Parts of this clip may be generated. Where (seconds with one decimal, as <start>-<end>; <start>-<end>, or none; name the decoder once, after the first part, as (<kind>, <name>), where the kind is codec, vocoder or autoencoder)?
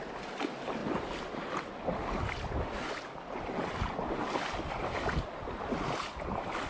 none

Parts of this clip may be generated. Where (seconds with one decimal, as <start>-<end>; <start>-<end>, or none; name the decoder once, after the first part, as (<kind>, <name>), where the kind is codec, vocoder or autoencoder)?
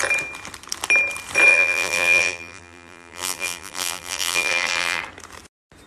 1.5-5.0 (vocoder, BigVGAN v2)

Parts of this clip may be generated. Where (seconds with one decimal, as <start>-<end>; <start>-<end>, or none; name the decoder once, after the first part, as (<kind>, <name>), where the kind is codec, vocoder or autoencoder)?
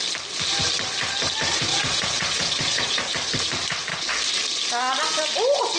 1.7-3.1 (vocoder, Vocos)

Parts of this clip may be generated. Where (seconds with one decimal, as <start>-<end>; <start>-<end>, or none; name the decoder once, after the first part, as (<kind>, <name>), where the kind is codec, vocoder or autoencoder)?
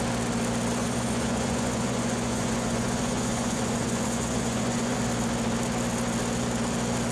0.8-5.0 (vocoder, Vocos)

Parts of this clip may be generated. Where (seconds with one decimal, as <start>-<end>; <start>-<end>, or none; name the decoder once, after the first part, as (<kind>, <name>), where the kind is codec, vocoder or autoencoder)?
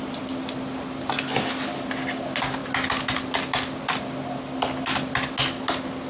none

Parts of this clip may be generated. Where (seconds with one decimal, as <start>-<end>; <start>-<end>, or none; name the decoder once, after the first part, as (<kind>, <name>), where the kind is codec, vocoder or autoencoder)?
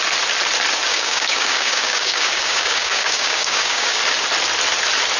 0.9-4.0 (codec, DAC)